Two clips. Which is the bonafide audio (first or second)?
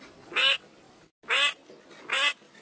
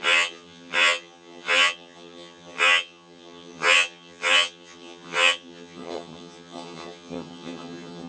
first